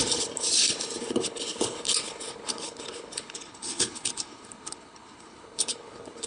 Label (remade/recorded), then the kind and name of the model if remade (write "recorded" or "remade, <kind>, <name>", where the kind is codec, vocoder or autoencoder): remade, codec, HILCodec